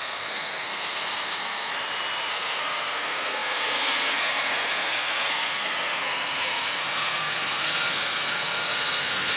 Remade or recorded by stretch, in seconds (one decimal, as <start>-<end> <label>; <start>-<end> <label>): 0.0-1.7 remade; 1.7-2.3 recorded; 2.3-9.4 remade